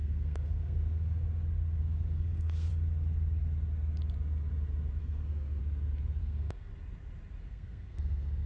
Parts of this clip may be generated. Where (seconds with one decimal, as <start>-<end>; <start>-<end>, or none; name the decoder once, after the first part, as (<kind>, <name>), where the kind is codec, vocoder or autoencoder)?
0.0-1.2 (codec, SNAC); 1.8-2.7; 5.0-5.6; 6.2-6.7; 7.4-8.5